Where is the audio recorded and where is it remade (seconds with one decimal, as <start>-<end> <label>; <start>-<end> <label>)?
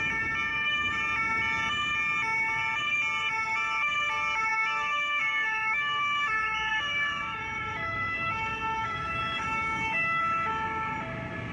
0.0-0.5 recorded; 0.5-1.0 remade; 1.0-4.5 recorded; 4.5-6.3 remade; 6.3-6.7 recorded; 6.7-10.2 remade; 10.2-11.5 recorded